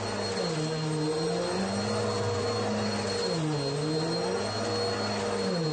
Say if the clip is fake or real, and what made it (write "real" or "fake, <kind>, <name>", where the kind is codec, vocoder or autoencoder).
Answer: real